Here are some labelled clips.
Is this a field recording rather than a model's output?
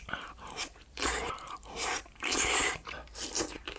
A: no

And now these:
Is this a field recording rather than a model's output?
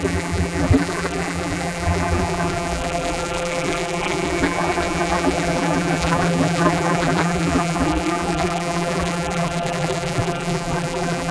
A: no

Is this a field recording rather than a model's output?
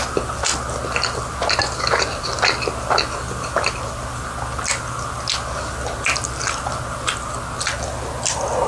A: yes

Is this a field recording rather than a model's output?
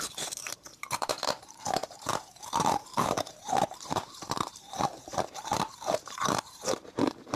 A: no